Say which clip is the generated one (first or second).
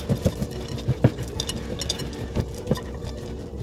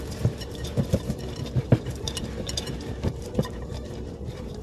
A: second